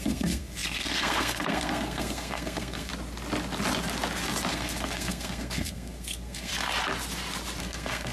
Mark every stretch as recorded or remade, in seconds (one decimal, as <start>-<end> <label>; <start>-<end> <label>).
0.0-2.9 remade; 2.9-4.5 recorded; 4.5-6.5 remade; 6.5-7.6 recorded; 7.6-8.1 remade